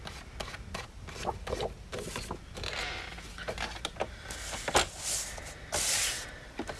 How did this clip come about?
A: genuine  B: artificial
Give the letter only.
A